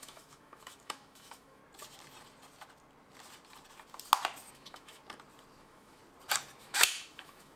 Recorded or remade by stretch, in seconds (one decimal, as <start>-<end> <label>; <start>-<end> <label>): 0.0-1.6 remade; 1.6-4.5 recorded; 4.5-5.0 remade; 5.0-5.6 recorded; 5.6-6.0 remade; 6.0-6.6 recorded; 6.6-7.6 remade